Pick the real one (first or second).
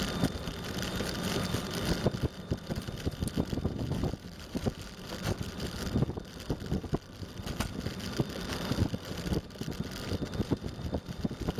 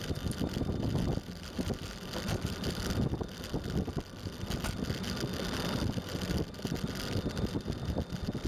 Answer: second